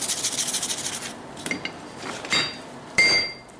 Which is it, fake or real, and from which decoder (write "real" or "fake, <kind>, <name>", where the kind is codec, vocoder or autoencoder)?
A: real